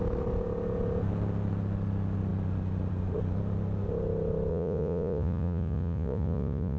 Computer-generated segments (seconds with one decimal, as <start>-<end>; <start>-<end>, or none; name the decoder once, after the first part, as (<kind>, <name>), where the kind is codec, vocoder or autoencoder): 4.5-6.8 (vocoder, Vocos)